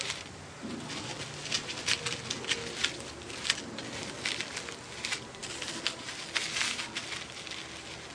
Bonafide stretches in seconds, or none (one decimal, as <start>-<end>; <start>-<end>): 0.0-8.1